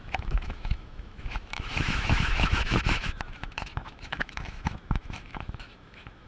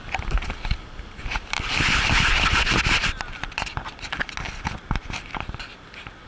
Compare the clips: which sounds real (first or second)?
second